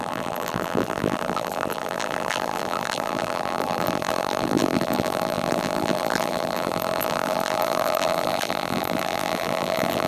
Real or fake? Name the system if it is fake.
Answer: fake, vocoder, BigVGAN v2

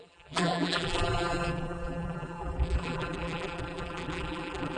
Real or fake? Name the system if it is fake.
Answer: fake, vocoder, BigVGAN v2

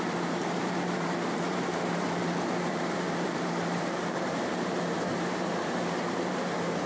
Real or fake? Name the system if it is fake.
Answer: fake, vocoder, BigVGAN v2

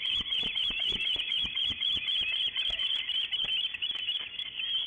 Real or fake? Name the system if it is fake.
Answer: fake, vocoder, BigVGAN v2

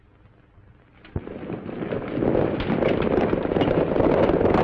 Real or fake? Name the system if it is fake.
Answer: real